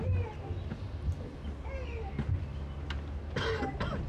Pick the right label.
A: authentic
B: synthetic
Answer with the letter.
A